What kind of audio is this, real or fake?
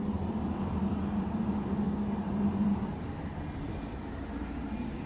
fake